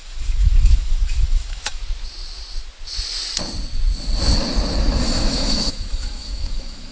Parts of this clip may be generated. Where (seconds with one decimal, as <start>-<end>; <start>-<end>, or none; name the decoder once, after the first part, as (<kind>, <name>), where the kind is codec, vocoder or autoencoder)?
0.0-1.8 (autoencoder, DAC-VAE); 5.0-6.9